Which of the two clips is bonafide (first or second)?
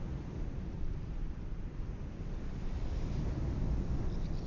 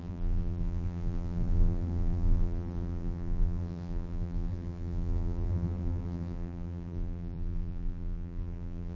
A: first